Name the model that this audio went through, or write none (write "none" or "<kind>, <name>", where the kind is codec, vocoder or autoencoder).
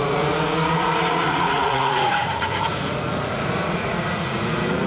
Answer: vocoder, Vocos